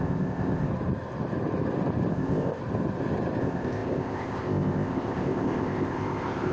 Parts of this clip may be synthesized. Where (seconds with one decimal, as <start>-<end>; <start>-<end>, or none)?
0.0-0.7; 2.1-2.6; 3.4-6.5